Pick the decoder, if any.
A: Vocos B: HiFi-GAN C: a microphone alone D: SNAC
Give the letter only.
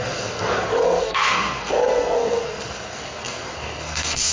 D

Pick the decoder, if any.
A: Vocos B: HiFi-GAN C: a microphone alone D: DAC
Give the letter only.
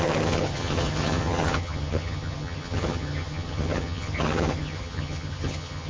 B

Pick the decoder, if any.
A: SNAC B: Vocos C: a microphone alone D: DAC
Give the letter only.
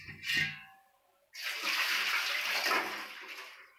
C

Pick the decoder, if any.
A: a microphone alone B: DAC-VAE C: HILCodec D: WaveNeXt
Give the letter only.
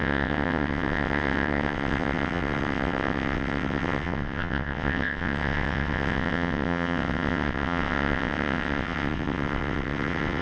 D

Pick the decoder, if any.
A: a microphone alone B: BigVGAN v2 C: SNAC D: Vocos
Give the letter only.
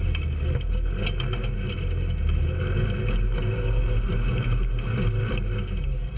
A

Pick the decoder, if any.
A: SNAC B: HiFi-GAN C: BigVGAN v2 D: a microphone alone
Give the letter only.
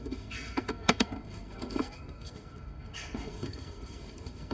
A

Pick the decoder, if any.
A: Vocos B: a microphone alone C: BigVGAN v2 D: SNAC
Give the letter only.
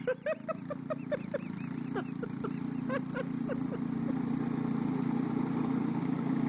B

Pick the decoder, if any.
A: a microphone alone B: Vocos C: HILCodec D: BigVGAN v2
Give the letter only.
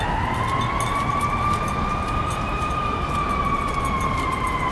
A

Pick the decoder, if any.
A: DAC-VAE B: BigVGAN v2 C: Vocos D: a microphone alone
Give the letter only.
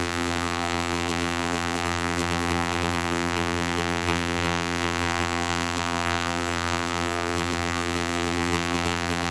B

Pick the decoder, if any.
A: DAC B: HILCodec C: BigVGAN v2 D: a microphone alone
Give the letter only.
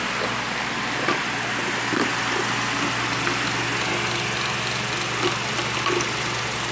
D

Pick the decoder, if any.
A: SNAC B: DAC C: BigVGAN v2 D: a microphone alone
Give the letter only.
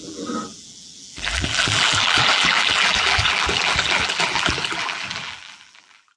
C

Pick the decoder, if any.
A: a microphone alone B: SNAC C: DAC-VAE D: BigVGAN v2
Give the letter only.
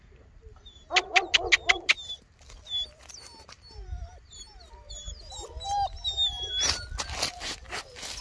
A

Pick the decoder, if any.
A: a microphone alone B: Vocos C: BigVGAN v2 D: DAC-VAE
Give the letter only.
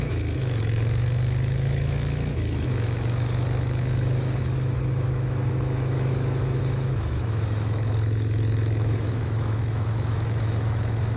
D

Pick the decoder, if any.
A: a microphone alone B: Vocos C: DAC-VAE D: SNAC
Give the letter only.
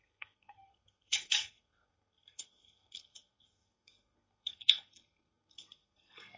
D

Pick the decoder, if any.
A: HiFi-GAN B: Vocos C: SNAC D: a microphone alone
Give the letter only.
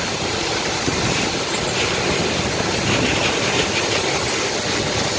D